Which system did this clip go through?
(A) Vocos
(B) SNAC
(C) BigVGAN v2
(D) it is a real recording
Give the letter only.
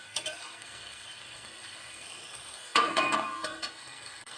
B